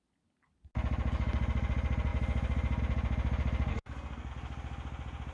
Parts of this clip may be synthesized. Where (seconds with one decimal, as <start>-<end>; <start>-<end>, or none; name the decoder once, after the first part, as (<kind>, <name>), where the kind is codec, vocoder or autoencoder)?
3.7-4.3 (codec, SNAC)